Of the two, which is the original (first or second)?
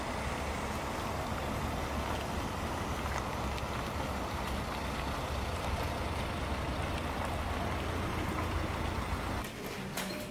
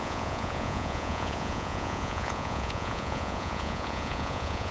first